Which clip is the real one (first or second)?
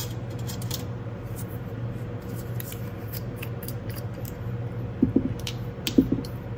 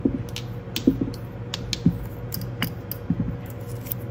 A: second